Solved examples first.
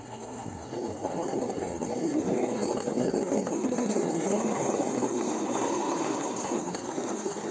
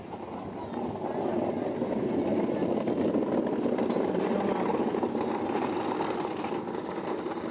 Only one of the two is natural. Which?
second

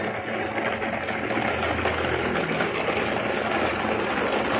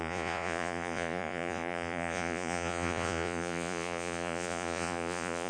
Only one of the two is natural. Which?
first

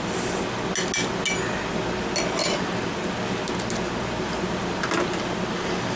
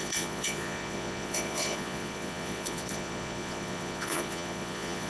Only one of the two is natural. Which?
first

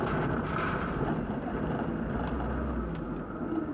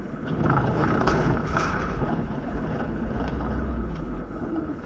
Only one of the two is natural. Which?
first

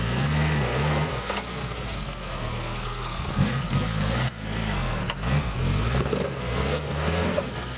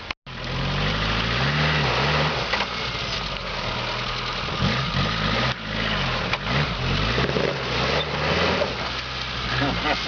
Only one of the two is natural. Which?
second